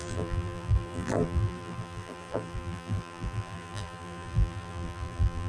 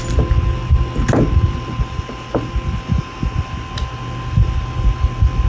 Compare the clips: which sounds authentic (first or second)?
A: second